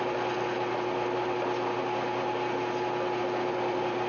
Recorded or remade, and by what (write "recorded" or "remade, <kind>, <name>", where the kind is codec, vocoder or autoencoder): recorded